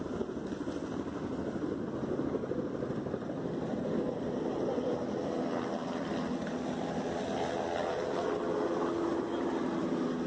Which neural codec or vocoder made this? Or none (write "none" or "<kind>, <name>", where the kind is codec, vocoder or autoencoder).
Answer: none